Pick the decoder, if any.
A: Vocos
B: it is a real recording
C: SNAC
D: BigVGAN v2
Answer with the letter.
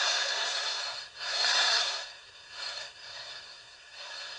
C